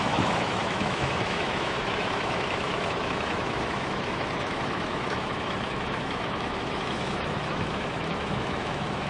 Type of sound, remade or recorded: remade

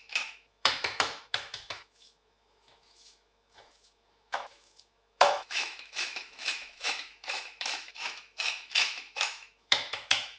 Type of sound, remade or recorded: remade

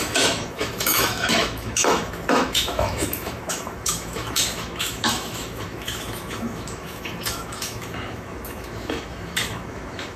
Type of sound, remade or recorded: remade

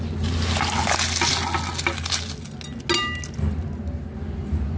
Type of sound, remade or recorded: recorded